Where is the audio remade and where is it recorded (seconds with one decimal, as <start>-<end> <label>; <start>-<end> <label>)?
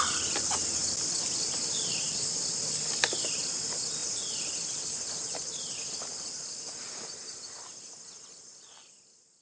0.0-9.4 recorded